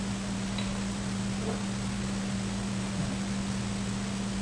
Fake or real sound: real